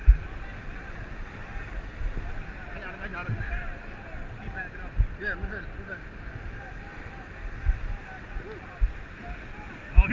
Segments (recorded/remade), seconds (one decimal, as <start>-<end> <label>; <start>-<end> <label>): 0.0-10.1 recorded